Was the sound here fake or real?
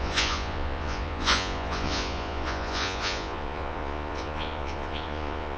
fake